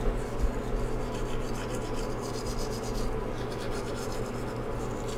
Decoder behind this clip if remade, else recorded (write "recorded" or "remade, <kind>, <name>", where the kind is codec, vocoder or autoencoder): recorded